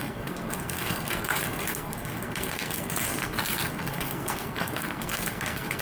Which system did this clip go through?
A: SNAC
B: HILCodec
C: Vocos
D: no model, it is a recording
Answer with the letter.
A